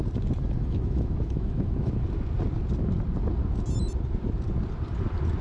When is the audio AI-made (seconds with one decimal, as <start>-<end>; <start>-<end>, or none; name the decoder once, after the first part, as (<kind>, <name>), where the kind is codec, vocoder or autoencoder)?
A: 0.6-1.9 (autoencoder, DAC-VAE)